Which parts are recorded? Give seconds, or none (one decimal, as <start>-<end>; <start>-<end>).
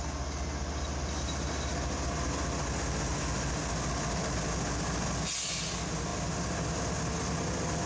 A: 0.0-7.9